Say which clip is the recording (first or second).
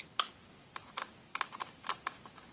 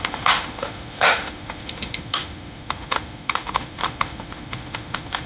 first